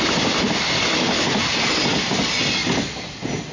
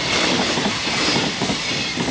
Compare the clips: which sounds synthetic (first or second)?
second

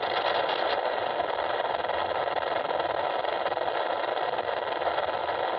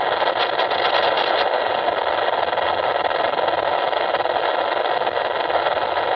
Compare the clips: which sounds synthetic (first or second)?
first